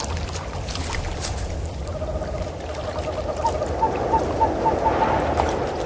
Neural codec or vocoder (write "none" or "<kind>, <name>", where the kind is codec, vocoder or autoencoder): none